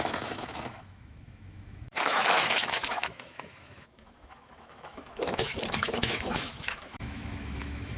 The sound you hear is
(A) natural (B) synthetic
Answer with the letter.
B